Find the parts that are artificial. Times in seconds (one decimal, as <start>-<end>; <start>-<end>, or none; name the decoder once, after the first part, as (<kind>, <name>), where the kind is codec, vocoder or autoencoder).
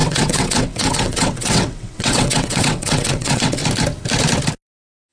0.0-3.6 (vocoder, WaveNeXt)